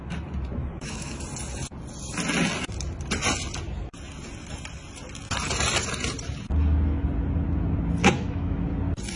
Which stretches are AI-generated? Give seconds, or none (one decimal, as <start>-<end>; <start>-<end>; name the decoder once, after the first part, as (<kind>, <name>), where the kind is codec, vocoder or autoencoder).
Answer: 0.6-1.2 (autoencoder, DAC-VAE); 8.0-8.6